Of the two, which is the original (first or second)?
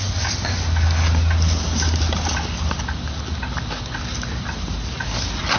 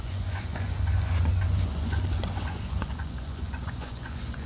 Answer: first